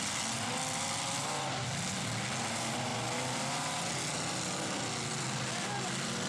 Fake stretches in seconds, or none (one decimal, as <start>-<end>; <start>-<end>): none